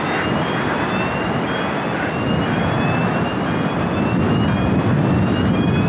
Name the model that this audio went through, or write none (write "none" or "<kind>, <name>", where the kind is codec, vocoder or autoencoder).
none